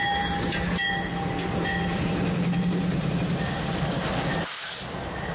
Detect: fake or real real